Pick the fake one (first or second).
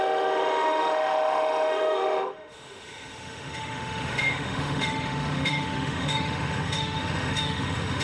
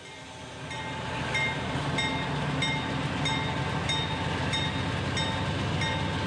first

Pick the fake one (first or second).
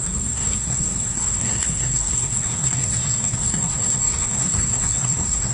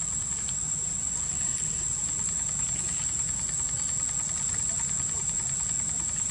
first